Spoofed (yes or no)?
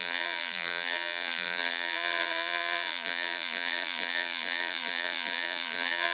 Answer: yes